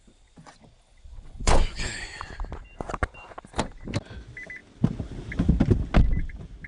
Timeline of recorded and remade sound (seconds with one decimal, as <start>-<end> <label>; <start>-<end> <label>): 0.0-1.1 recorded; 1.1-2.3 remade; 2.3-6.7 recorded